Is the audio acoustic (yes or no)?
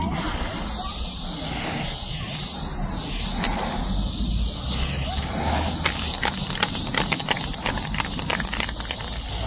yes